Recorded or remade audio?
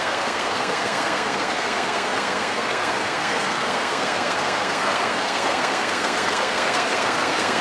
remade